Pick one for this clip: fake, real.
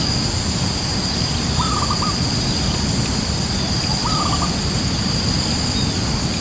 real